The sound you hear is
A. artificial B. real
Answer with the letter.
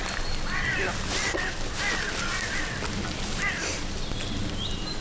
B